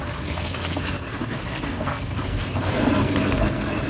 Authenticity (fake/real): fake